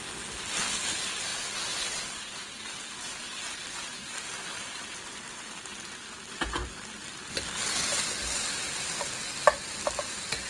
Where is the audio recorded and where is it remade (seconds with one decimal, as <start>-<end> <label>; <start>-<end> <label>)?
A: 0.0-10.5 recorded